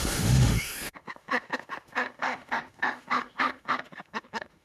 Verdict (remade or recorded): remade